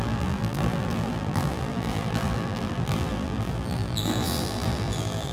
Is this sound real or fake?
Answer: fake